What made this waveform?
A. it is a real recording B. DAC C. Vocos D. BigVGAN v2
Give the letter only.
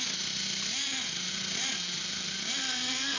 A